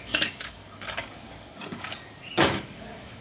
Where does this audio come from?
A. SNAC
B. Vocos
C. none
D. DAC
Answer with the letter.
D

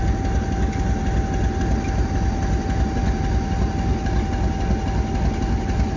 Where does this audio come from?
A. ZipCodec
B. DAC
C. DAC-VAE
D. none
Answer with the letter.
D